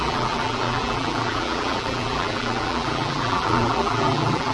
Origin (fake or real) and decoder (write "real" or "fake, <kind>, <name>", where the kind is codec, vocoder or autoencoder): fake, vocoder, BigVGAN v2